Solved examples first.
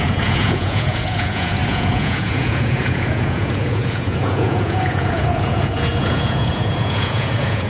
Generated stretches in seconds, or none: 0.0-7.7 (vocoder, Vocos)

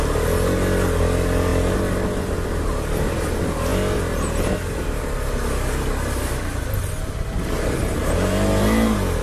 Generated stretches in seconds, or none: none

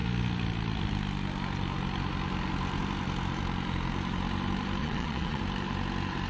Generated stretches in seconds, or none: 4.8-5.4 (vocoder, Vocos)

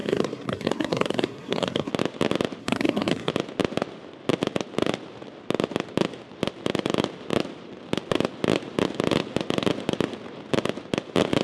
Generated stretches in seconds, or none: 0.0-1.9 (codec, SNAC); 2.6-3.3

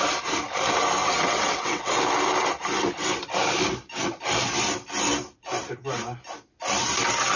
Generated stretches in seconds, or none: 1.0-2.0 (vocoder, WaveNeXt)

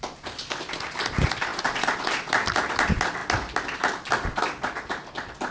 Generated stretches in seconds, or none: none

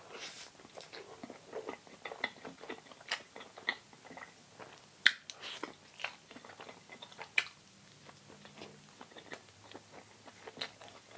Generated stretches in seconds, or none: none